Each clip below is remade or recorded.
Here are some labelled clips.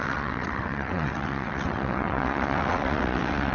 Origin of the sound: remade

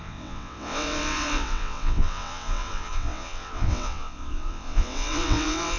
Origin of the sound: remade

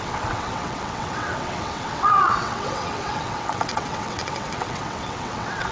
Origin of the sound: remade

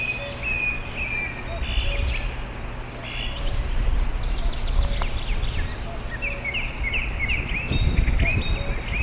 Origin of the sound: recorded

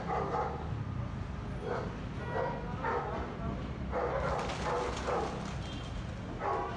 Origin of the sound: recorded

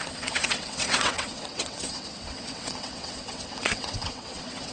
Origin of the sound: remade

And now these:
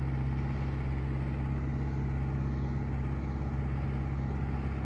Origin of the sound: recorded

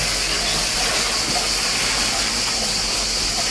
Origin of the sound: recorded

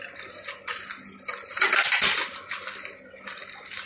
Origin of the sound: recorded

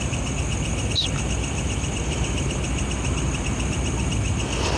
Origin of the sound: recorded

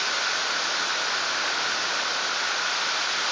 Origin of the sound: recorded